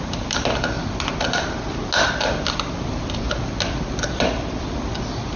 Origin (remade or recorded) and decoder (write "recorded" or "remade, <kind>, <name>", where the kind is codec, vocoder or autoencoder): recorded